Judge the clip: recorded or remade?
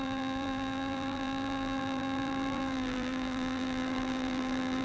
remade